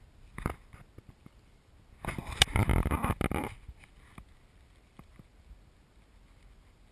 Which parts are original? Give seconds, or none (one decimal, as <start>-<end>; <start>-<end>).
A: 0.0-6.9